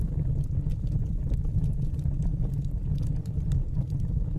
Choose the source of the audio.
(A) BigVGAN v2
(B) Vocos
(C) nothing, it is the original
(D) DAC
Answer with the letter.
A